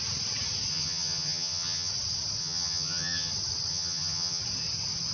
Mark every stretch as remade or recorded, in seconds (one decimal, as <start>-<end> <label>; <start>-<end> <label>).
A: 0.0-0.7 recorded; 0.7-1.9 remade; 1.9-2.4 recorded; 2.4-3.3 remade; 3.3-3.7 recorded; 3.7-4.4 remade; 4.4-5.1 recorded